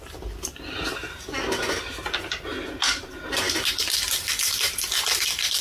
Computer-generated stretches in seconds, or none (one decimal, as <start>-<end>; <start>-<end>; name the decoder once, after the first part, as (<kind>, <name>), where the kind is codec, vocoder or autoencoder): none